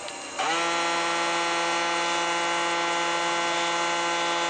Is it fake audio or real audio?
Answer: real